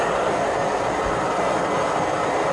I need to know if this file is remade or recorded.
recorded